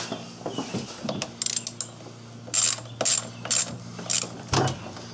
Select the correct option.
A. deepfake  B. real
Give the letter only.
B